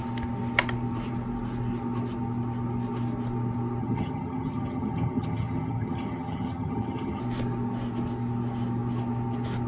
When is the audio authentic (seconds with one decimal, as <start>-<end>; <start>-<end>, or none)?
0.0-3.8; 7.2-9.7